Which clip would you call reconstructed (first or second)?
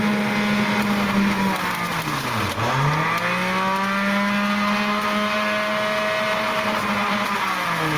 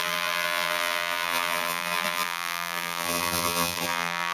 second